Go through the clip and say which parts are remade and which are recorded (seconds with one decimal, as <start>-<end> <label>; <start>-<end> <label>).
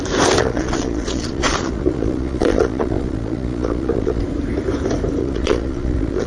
0.0-0.4 recorded; 0.4-4.2 remade; 4.2-5.2 recorded; 5.2-6.3 remade